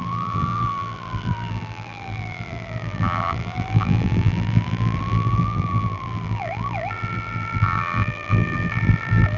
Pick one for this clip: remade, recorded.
remade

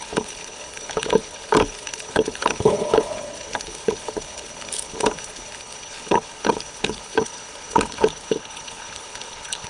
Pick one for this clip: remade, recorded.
remade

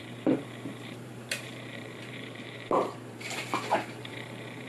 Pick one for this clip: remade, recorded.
remade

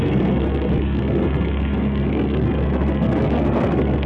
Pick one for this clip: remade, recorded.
remade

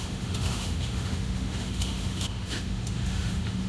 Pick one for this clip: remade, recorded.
remade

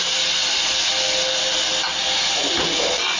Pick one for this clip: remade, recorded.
recorded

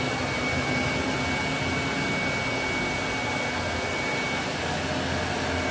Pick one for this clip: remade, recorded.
recorded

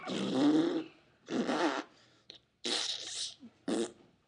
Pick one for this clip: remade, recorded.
remade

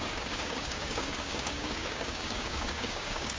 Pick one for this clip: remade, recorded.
remade